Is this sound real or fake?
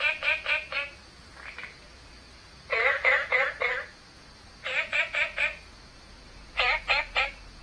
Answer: fake